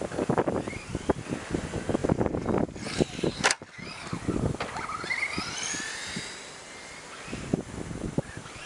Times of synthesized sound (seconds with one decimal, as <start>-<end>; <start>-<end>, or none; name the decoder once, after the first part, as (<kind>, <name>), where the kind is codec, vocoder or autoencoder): none